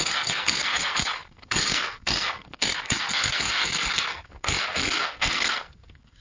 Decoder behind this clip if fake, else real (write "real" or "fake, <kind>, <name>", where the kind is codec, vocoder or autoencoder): fake, codec, SNAC